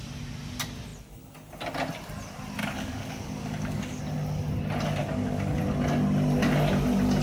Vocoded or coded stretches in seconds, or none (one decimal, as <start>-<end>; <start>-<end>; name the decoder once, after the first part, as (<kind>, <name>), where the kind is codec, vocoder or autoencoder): 2.6-4.0 (codec, DAC); 5.0-5.6